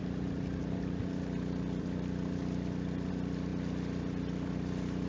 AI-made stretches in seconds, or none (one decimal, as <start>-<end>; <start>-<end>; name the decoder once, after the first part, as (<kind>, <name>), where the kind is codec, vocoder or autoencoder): none